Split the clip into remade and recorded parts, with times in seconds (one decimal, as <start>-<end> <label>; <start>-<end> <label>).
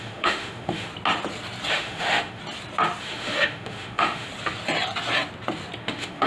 0.0-0.9 remade; 0.9-1.7 recorded; 1.7-2.4 remade; 2.4-3.0 recorded; 3.0-4.3 remade; 4.3-5.8 recorded; 5.8-6.3 remade